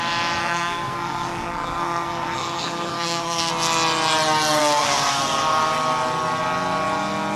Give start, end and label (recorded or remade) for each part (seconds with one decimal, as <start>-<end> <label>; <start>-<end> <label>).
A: 0.0-0.4 recorded; 0.4-3.5 remade; 3.5-4.6 recorded; 4.6-5.2 remade; 5.2-7.4 recorded